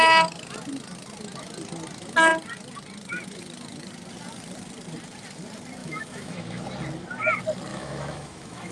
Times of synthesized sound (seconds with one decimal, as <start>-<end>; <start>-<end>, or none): 5.8-6.6; 7.7-8.7